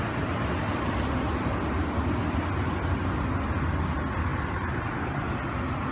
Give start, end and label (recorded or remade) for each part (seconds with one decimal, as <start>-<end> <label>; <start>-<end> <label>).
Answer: 0.0-5.9 recorded